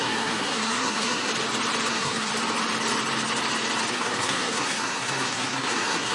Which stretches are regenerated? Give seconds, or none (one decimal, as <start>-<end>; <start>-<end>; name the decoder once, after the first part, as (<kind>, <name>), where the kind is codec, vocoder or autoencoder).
0.0-1.3 (codec, SNAC); 1.9-2.3; 3.9-6.1